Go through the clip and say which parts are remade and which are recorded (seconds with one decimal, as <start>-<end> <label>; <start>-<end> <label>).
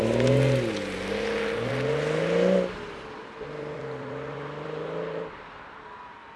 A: 0.0-3.2 recorded; 3.2-6.0 remade; 6.0-6.4 recorded